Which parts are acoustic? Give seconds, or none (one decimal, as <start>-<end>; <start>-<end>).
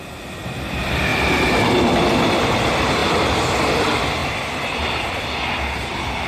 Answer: 1.1-1.8; 3.0-3.6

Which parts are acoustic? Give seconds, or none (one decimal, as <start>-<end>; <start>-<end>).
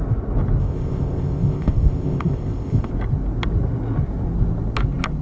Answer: 0.0-0.6; 2.9-5.2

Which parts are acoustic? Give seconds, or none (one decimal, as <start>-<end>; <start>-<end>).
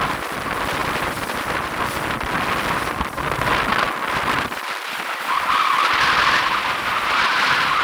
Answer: 0.0-0.8; 1.8-7.8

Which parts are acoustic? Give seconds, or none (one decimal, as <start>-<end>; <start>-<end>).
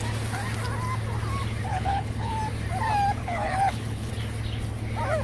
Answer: 0.0-1.7; 2.3-3.2; 4.1-5.2